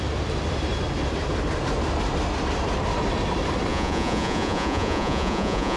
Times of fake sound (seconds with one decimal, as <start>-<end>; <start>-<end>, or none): 3.7-5.8